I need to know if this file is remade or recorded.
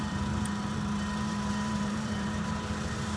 remade